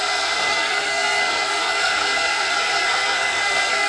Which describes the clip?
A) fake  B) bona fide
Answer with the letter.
A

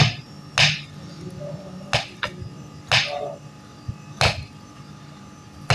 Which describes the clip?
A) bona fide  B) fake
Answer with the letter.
A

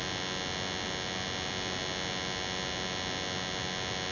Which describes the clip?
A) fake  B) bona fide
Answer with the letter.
B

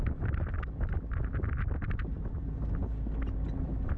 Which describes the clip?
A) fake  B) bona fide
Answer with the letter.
B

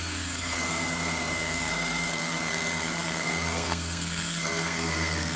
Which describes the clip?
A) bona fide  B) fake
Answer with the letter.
B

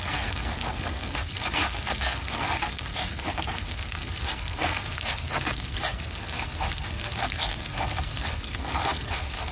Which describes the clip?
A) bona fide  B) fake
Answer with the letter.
B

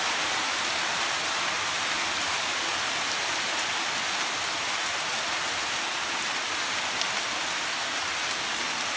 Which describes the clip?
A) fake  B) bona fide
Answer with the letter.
B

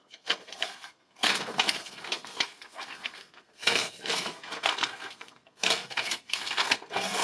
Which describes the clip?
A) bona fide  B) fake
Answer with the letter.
B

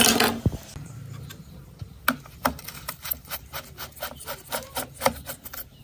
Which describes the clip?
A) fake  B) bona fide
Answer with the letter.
B